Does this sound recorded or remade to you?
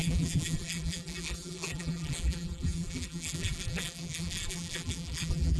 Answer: remade